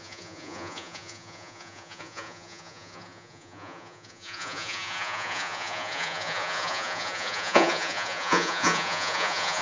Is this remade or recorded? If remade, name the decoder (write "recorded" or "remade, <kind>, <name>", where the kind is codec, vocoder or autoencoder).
remade, vocoder, Vocos